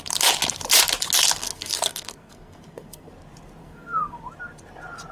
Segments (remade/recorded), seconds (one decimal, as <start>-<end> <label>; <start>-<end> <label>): 0.0-1.4 recorded; 1.4-3.1 remade; 3.1-3.6 recorded; 3.6-4.2 remade; 4.2-5.1 recorded